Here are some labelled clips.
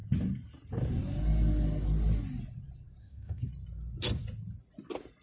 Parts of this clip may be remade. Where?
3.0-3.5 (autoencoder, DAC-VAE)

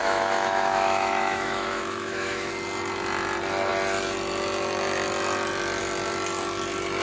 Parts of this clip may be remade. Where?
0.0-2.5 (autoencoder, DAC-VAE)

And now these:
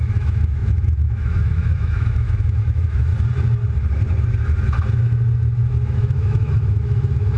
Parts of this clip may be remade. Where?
0.0-3.1 (autoencoder, DAC-VAE); 5.9-7.4

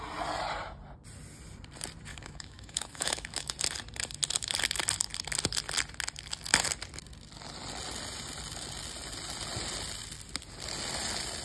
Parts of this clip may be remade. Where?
2.1-3.5 (autoencoder, DAC-VAE)